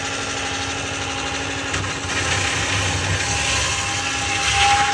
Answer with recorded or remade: recorded